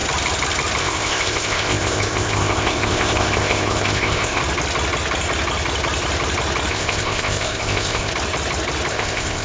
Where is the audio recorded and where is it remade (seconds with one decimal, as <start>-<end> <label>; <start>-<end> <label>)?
0.0-0.8 recorded; 0.8-4.4 remade; 4.4-6.7 recorded; 6.7-8.1 remade; 8.1-8.9 recorded; 8.9-9.4 remade